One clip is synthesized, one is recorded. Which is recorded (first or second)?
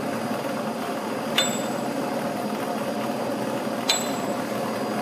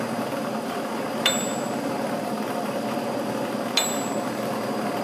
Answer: second